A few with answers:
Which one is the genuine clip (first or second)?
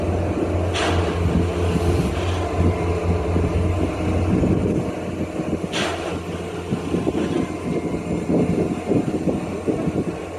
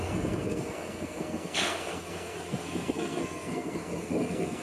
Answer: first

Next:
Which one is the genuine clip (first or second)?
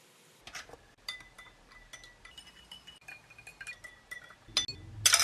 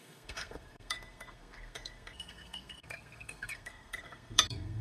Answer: first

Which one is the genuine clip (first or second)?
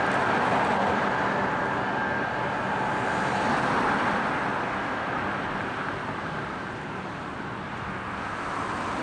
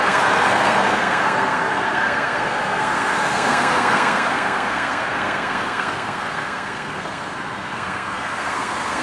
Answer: first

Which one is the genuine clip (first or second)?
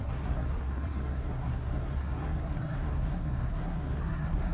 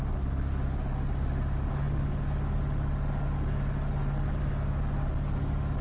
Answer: second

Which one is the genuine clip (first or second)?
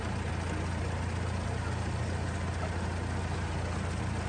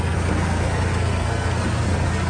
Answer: first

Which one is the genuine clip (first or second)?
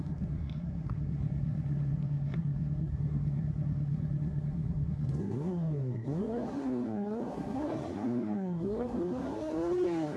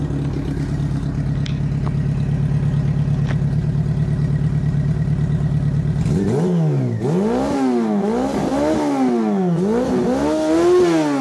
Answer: second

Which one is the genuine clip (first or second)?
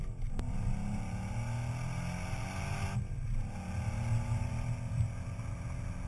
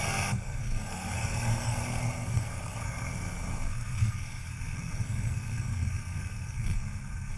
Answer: first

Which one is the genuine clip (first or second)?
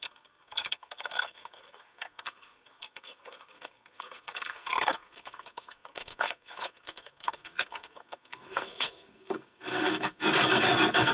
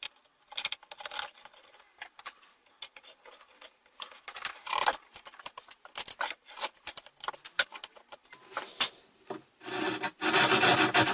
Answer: second